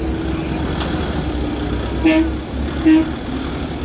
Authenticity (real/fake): real